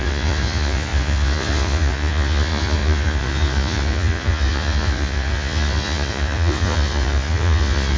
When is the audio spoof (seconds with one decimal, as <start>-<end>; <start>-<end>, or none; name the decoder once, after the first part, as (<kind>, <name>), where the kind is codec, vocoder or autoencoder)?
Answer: 0.0-8.0 (vocoder, Vocos)